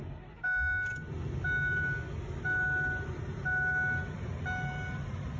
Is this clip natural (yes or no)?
yes